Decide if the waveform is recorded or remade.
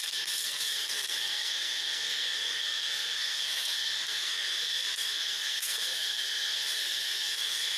remade